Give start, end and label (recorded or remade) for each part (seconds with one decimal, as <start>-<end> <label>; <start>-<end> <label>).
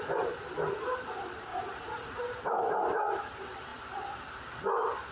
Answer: 0.0-1.5 recorded; 1.5-2.2 remade; 2.2-5.1 recorded